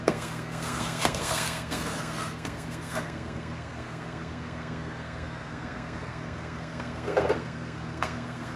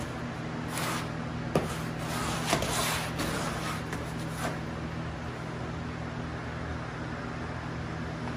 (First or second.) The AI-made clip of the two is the first